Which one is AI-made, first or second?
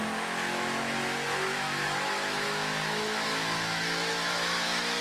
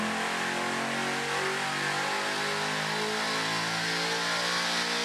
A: first